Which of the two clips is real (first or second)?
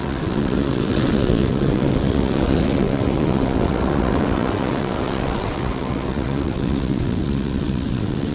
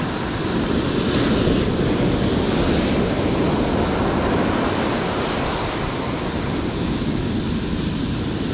second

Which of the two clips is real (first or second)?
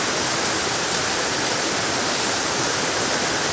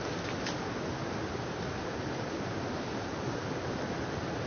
second